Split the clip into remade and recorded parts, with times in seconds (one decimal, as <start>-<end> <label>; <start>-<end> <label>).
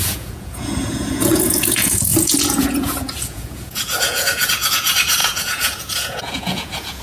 0.0-7.0 remade